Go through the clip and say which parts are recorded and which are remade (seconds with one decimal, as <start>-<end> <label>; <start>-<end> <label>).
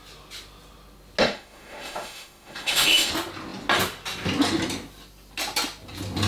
0.0-1.2 recorded; 1.2-3.1 remade; 3.1-6.3 recorded